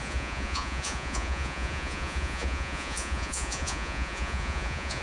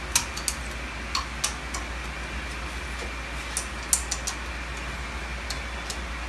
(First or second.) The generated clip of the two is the first